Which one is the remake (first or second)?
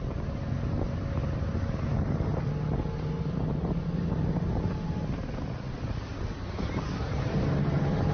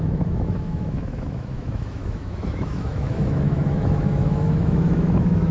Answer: second